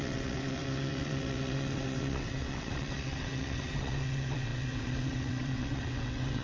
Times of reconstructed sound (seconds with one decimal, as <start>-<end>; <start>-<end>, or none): 0.0-6.4